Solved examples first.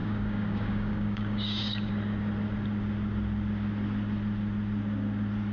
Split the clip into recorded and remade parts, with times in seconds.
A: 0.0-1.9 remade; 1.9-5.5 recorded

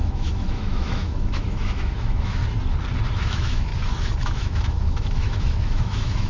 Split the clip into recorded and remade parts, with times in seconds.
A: 0.0-2.4 remade; 2.4-3.2 recorded; 3.2-3.7 remade; 3.7-4.2 recorded; 4.2-6.3 remade

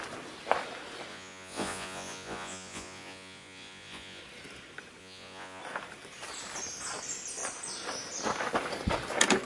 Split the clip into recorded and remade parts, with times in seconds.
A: 0.0-1.1 recorded; 1.1-4.2 remade; 4.2-5.0 recorded; 5.0-5.6 remade; 5.6-9.4 recorded

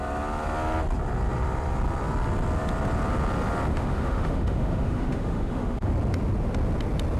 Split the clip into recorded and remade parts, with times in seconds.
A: 0.0-3.7 recorded; 3.7-5.9 remade; 5.9-7.2 recorded